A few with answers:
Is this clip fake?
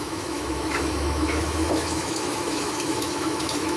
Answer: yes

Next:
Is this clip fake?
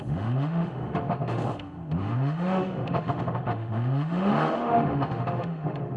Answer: yes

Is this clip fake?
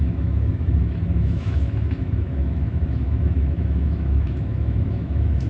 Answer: yes